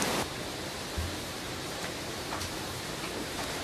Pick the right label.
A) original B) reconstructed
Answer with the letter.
B